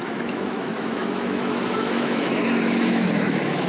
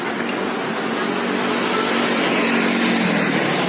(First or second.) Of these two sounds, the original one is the second